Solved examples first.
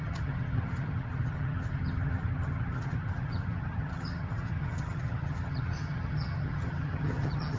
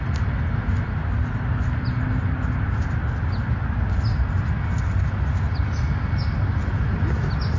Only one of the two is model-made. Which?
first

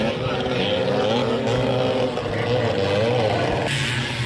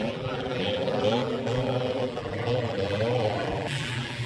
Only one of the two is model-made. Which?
second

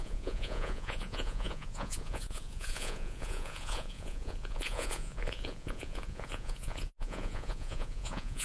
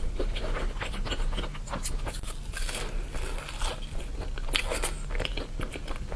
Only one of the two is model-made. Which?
first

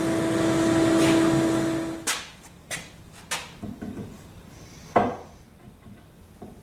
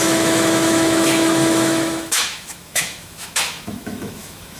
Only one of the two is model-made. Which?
second